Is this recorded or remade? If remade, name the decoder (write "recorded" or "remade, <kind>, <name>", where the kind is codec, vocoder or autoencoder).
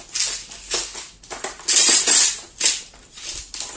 recorded